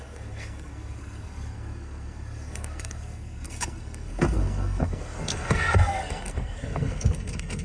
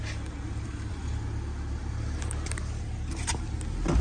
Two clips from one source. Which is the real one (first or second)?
second